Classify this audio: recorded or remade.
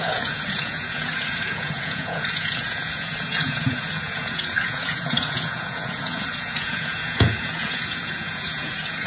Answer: remade